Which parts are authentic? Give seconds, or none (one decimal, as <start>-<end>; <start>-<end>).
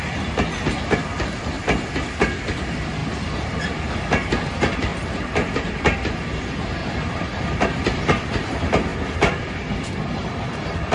0.0-3.0; 4.0-4.9; 6.1-6.8; 8.5-8.9; 10.1-10.9